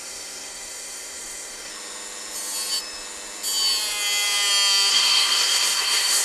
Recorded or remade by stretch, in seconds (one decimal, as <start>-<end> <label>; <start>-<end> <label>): 0.0-1.7 remade; 1.7-4.9 recorded; 4.9-6.2 remade

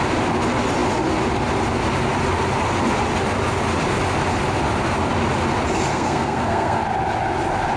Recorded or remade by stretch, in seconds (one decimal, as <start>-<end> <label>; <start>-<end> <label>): 0.0-5.9 recorded; 5.9-6.8 remade; 6.8-7.8 recorded

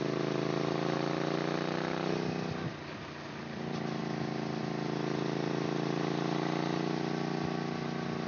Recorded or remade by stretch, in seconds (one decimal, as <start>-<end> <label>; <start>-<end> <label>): 0.0-8.3 recorded